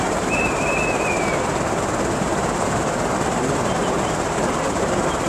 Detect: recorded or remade recorded